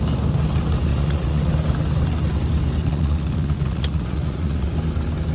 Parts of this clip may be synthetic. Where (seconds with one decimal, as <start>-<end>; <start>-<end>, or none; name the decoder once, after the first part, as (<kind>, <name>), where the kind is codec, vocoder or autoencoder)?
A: 0.9-1.5 (vocoder, Vocos); 2.9-4.7